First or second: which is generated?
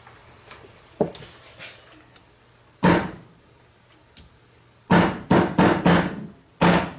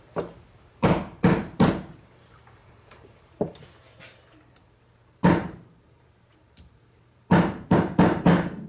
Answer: second